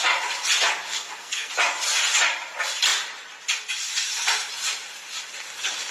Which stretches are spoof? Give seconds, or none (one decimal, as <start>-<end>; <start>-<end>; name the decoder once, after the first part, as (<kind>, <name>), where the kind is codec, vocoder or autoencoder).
0.9-1.5 (codec, SNAC)